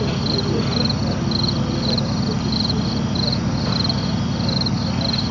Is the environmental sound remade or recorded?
recorded